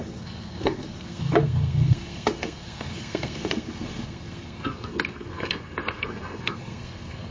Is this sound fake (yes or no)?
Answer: yes